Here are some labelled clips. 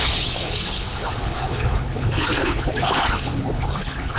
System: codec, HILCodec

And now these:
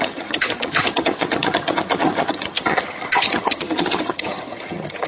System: vocoder, HiFi-GAN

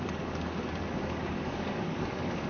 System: codec, DAC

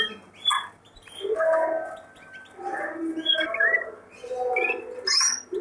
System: none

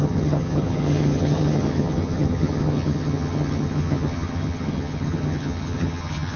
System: vocoder, HiFi-GAN